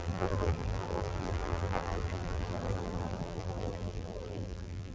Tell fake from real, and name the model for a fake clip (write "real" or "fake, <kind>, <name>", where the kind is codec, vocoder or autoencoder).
fake, vocoder, BigVGAN v2